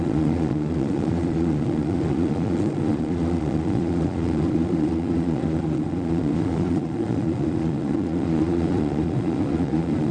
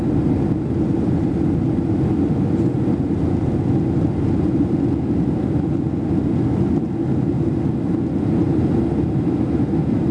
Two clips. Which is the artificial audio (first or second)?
first